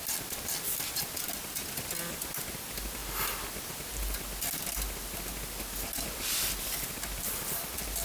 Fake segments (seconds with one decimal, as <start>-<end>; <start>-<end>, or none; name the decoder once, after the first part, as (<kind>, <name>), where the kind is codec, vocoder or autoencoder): none